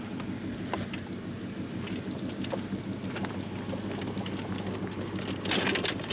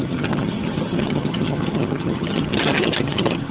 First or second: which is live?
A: first